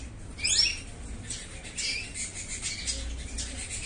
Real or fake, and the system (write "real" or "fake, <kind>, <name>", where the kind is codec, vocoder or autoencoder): real